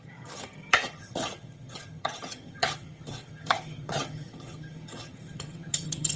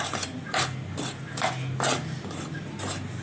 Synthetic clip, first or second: first